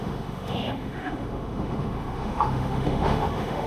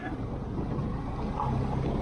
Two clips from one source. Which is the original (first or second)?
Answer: second